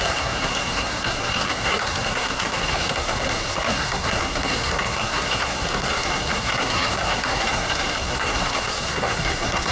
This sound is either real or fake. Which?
fake